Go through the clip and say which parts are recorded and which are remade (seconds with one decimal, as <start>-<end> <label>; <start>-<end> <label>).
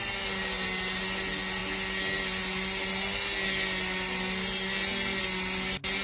0.0-6.0 recorded